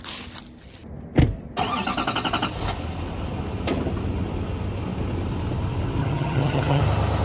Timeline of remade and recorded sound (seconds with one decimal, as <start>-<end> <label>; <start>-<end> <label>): 0.0-6.0 recorded; 6.0-6.8 remade; 6.8-7.2 recorded